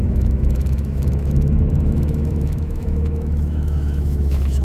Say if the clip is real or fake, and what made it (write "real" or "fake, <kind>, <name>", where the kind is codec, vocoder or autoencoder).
fake, autoencoder, DAC-VAE